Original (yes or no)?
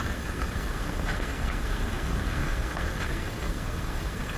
no